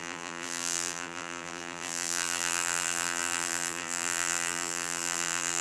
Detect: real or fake fake